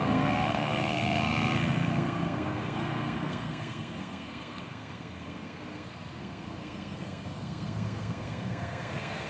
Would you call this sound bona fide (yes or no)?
no